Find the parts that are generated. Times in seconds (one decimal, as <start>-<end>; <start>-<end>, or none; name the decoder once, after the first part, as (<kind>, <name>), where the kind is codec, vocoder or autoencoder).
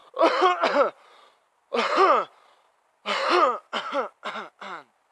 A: none